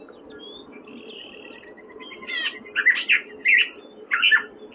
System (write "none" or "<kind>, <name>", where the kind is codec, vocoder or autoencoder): none